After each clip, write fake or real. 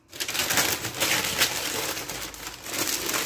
real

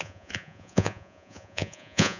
fake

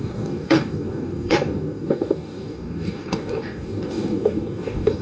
fake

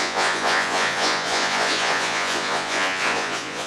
fake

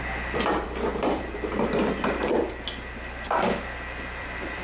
fake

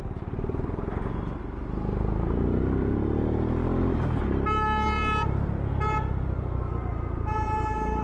real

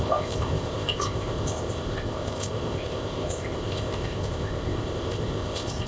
fake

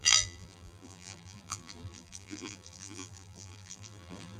fake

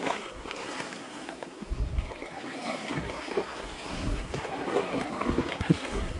fake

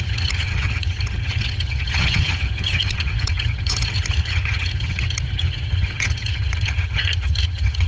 fake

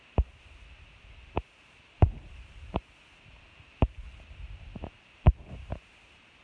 fake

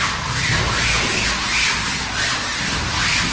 real